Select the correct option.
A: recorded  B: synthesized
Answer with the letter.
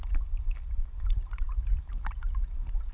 A